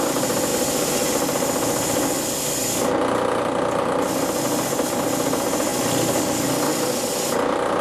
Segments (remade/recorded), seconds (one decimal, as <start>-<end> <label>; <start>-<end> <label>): 0.0-7.8 recorded